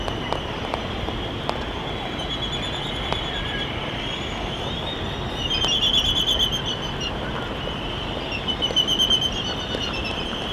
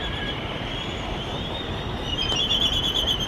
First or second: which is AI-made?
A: second